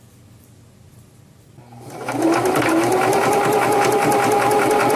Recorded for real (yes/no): yes